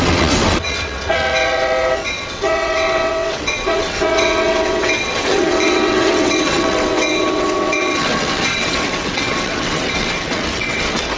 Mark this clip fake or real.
fake